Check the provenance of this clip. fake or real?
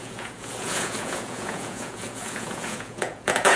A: fake